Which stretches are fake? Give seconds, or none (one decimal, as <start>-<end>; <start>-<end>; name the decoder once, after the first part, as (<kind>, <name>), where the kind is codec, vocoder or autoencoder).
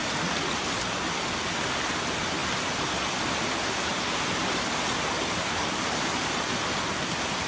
0.0-0.6 (vocoder, Vocos)